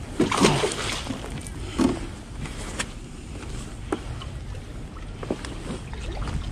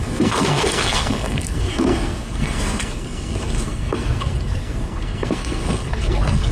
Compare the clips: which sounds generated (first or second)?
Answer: second